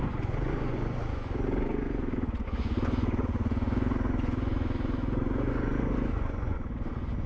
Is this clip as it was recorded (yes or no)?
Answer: no